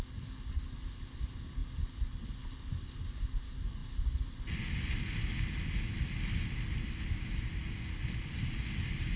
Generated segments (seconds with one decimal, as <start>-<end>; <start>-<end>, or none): none